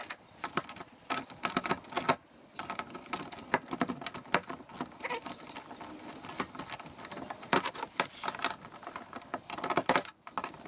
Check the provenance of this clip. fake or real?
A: real